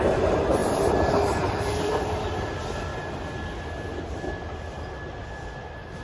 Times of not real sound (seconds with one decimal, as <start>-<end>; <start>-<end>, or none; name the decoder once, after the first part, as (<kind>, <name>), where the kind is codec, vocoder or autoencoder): 0.6-2.2 (vocoder, BigVGAN v2)